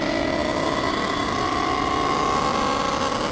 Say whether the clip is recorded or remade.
recorded